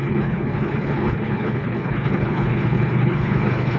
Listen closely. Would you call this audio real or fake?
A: fake